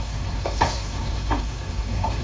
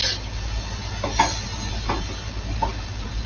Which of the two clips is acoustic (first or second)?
second